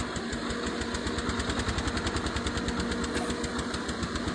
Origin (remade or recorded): recorded